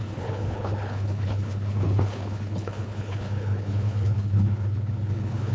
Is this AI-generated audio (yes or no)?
yes